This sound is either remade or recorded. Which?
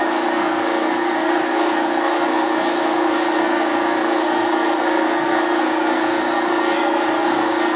remade